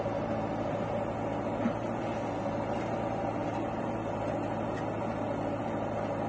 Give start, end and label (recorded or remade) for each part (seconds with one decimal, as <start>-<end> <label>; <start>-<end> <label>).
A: 0.0-6.3 recorded